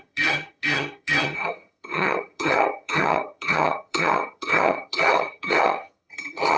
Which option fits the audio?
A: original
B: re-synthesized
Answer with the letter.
B